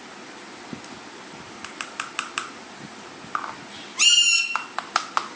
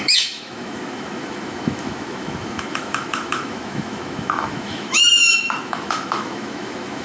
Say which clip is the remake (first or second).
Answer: second